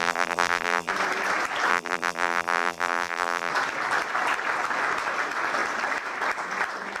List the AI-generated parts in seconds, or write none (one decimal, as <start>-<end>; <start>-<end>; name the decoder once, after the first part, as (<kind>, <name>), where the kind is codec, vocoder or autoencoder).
0.0-0.9 (vocoder, BigVGAN v2); 1.7-3.5